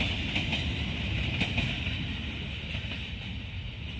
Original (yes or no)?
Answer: yes